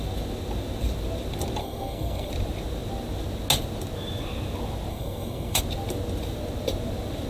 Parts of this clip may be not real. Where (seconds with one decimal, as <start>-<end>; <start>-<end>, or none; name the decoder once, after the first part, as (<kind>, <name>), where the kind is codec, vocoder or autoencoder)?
1.6-2.3 (codec, SNAC); 4.9-5.6